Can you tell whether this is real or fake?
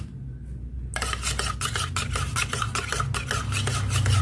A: real